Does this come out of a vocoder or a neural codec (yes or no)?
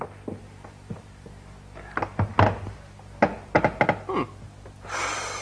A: no